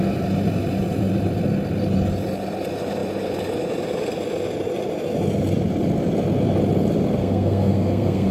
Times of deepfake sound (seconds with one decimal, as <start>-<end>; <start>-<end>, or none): 7.2-8.3